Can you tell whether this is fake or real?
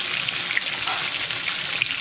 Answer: real